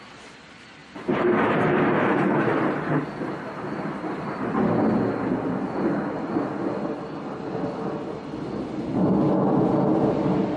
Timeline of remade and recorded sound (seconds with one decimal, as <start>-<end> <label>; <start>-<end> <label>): 0.0-0.8 recorded; 0.8-4.6 remade; 4.6-10.6 recorded